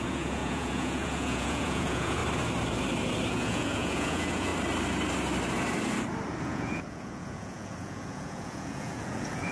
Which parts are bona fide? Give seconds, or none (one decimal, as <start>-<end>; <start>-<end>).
2.2-3.3; 4.5-6.4